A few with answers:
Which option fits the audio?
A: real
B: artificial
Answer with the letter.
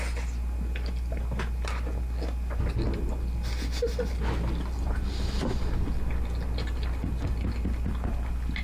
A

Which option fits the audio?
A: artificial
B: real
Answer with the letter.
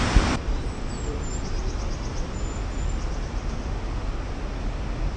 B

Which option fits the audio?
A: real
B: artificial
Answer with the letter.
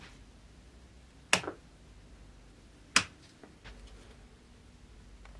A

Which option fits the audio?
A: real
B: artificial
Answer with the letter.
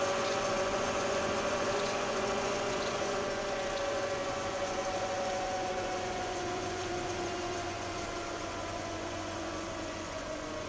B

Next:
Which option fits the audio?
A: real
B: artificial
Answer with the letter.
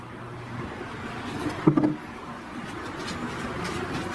A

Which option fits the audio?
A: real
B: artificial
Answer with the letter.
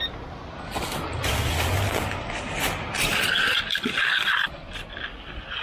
A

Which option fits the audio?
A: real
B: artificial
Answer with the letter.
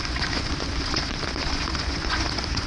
B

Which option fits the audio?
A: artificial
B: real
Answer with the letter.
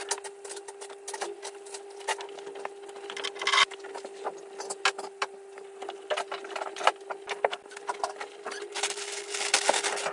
B